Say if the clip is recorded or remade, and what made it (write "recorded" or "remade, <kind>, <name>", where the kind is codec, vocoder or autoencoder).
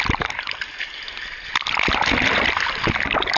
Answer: recorded